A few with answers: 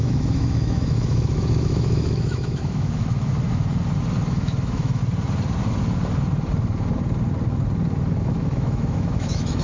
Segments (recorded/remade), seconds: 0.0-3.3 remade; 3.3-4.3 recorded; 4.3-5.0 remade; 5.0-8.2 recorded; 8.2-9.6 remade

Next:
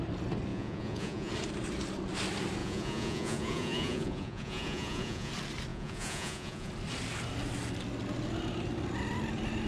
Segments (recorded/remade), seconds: 0.0-0.5 recorded; 0.5-1.3 remade; 1.3-2.6 recorded; 2.6-5.3 remade; 5.3-5.7 recorded; 5.7-6.7 remade; 6.7-9.7 recorded

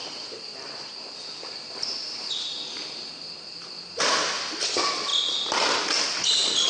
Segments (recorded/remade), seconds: 0.0-6.7 recorded

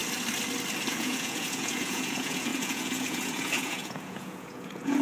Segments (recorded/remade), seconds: 0.0-0.9 recorded; 0.9-5.0 remade

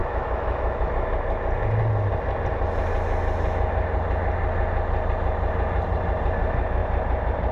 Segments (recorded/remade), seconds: 0.0-0.9 remade; 0.9-7.5 recorded

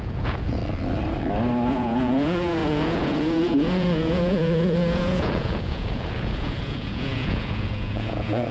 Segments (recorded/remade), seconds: 0.0-0.6 remade; 0.6-1.7 recorded; 1.7-8.5 remade